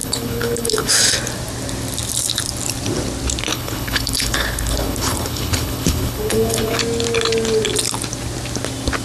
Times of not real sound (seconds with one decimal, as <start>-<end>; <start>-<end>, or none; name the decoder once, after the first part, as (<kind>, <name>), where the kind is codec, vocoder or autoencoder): 0.0-0.9 (codec, HILCodec); 3.5-6.8